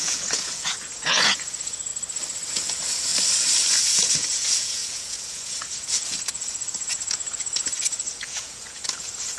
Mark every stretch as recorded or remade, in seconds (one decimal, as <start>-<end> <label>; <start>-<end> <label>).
0.0-1.9 remade; 1.9-2.5 recorded; 2.5-3.1 remade; 3.1-3.7 recorded; 3.7-9.4 remade